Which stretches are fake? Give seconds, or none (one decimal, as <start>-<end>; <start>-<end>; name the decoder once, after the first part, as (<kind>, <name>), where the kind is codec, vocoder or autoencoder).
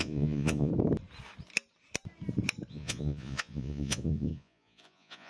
0.0-0.7 (vocoder, Vocos); 2.7-5.3